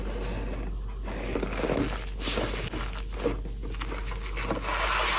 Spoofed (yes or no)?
no